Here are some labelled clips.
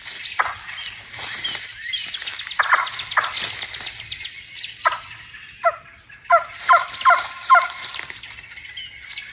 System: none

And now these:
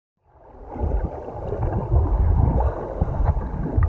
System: none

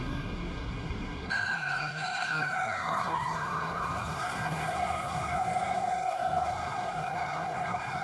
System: codec, SNAC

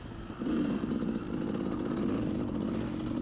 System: none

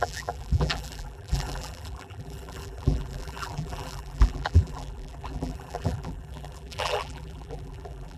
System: vocoder, BigVGAN v2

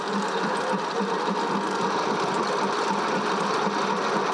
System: none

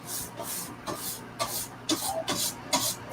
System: none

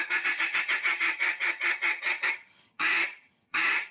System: vocoder, HiFi-GAN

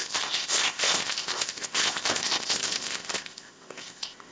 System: codec, ZipCodec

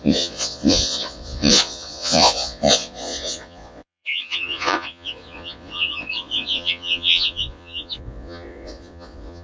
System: vocoder, Vocos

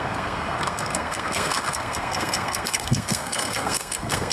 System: codec, SNAC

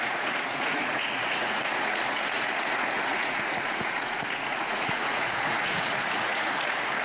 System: vocoder, Vocos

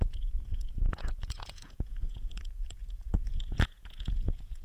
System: vocoder, Vocos